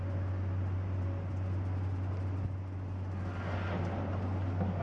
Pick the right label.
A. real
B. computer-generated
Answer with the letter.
A